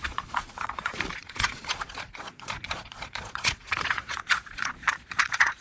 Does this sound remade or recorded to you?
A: remade